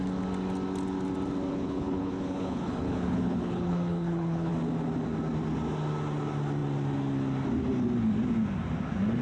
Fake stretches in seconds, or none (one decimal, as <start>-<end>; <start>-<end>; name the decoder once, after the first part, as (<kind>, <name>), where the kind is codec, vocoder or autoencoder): 1.5-4.5 (codec, HILCodec)